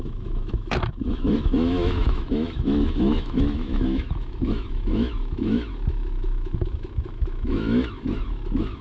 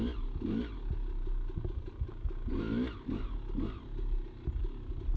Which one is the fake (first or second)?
first